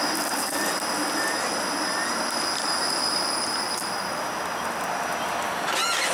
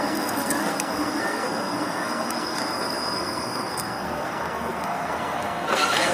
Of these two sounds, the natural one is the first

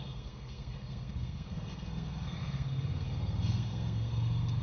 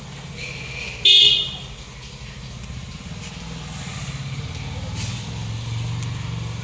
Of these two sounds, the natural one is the second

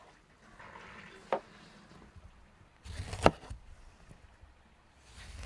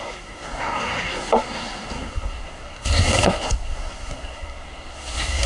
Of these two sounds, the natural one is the first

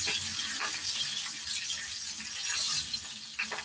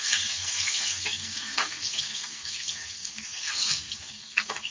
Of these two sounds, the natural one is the first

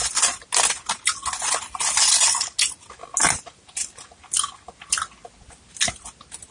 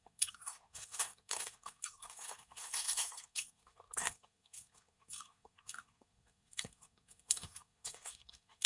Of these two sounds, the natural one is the first